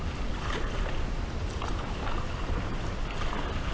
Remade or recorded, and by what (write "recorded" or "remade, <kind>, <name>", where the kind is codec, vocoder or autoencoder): recorded